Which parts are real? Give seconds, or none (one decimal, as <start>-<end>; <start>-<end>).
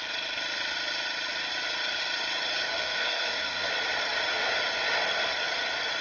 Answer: 0.0-2.7; 3.7-6.0